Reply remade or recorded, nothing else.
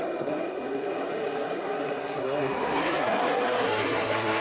remade